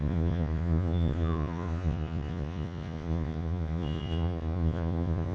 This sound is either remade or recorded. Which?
remade